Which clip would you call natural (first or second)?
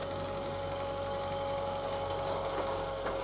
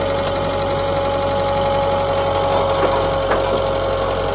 second